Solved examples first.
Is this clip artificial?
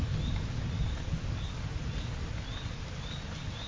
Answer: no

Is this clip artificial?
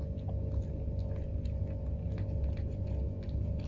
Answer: no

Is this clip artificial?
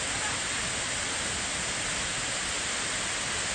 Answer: no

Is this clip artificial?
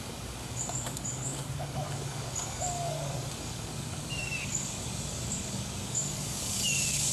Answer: yes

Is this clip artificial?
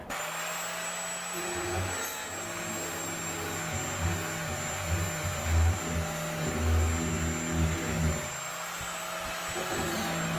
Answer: no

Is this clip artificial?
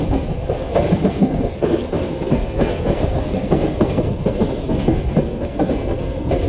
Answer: yes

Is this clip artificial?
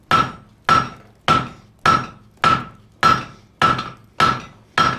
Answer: no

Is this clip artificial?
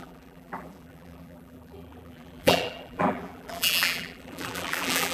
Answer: yes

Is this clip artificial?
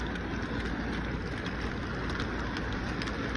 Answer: no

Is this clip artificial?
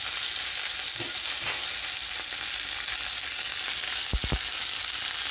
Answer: no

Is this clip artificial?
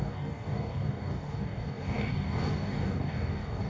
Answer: yes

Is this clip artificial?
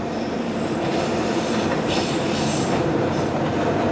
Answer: yes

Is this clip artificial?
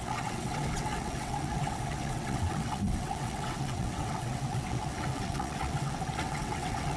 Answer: yes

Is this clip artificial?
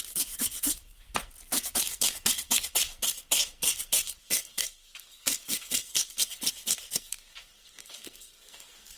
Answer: yes